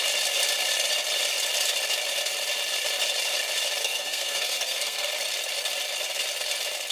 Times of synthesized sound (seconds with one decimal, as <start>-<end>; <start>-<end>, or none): 3.8-5.1